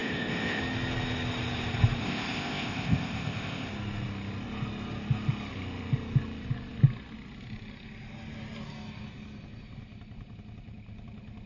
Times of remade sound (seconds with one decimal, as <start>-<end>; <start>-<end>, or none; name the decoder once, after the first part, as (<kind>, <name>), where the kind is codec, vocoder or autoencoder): 0.0-0.6 (codec, ZipCodec); 2.0-3.7